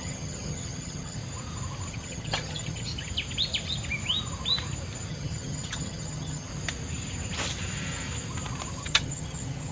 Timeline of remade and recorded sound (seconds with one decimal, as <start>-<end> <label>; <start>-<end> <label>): 0.0-1.2 remade; 1.2-1.9 recorded; 1.9-2.9 remade; 2.9-5.1 recorded; 5.1-6.5 remade; 6.5-8.8 recorded; 8.8-9.7 remade